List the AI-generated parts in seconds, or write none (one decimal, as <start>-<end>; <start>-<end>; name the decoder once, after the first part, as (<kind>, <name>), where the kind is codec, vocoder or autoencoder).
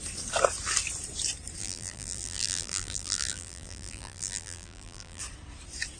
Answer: 1.6-5.2 (vocoder, BigVGAN v2)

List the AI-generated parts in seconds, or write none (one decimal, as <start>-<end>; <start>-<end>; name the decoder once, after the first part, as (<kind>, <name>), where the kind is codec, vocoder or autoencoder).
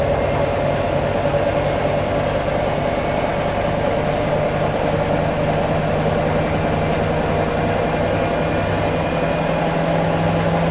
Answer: none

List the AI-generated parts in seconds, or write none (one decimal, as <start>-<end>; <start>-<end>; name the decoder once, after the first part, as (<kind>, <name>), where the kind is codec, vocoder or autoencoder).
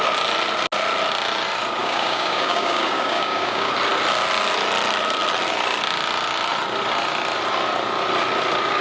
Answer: 1.8-3.7 (codec, DAC)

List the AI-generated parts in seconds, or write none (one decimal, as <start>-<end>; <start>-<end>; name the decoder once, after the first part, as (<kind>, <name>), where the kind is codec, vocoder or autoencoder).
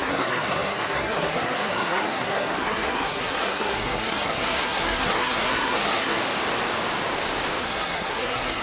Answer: 0.0-6.2 (codec, SNAC); 7.6-8.6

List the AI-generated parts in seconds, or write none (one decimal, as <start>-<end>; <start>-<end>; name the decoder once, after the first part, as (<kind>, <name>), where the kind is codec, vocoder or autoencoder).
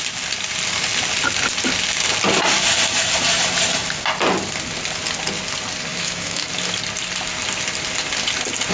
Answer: 5.9-6.5 (autoencoder, DAC-VAE)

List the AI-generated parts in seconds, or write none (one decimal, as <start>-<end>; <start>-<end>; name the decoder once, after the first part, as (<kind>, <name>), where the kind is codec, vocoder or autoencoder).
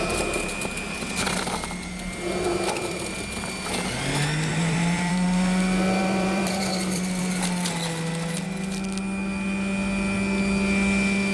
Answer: 4.5-5.6 (vocoder, BigVGAN v2); 6.0-7.2